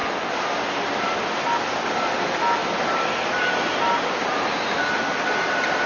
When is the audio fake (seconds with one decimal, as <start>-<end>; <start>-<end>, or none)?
none